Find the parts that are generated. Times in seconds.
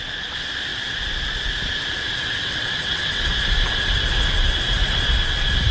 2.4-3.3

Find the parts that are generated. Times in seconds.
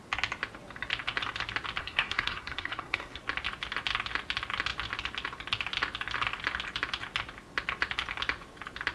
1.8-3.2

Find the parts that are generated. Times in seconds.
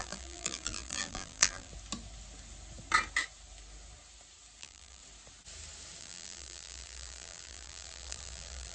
0.0-1.7; 4.6-5.0; 6.0-8.7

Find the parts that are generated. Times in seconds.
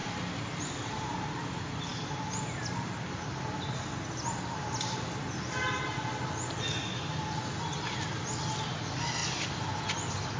none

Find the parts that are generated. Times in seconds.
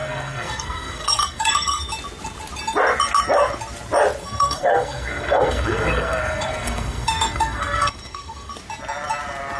0.0-1.9; 4.2-8.5